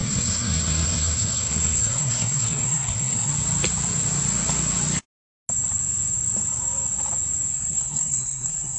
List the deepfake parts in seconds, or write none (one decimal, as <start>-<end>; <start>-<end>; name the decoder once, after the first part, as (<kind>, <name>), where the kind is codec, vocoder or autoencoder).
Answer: 0.0-3.3 (codec, SNAC); 7.5-8.8